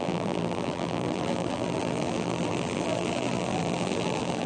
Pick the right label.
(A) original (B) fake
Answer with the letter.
B